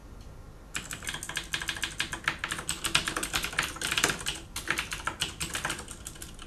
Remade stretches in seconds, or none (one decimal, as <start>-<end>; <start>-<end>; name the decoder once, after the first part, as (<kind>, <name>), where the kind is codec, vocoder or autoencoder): none